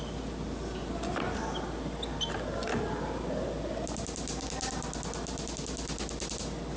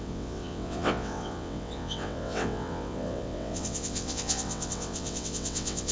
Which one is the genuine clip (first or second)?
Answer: first